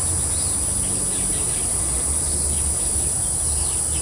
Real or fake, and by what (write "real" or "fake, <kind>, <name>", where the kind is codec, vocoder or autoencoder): real